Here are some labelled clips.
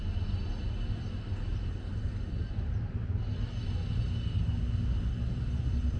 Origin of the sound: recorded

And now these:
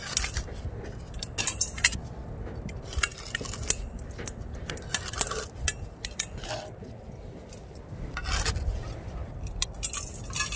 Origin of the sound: recorded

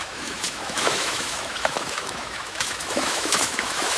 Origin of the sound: remade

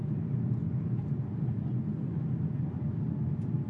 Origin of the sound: recorded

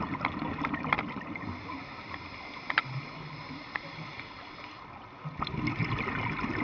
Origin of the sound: recorded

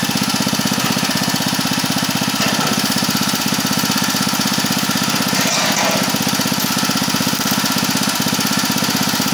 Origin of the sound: recorded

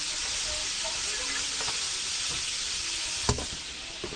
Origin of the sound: recorded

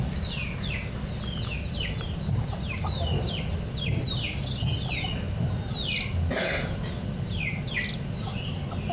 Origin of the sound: recorded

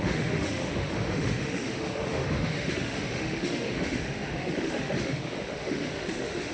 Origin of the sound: remade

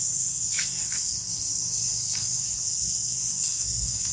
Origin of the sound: remade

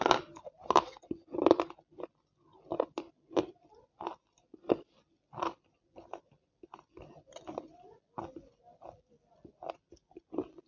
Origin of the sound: recorded